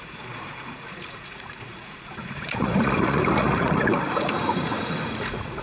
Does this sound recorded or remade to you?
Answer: remade